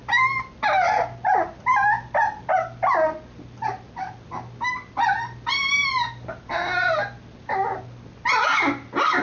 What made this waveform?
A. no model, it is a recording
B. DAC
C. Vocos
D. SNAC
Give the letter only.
A